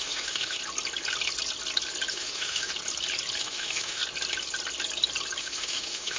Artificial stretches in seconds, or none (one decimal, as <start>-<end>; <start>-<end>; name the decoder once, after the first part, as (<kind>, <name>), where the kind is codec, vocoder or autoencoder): 0.0-0.6 (autoencoder, DAC-VAE); 2.1-2.7; 3.4-4.0; 5.4-6.2